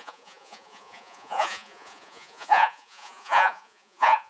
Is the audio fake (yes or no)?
yes